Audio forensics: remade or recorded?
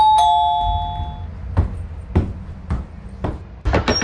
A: recorded